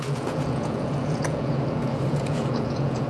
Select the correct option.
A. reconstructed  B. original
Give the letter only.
A